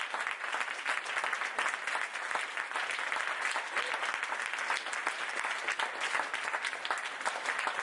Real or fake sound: fake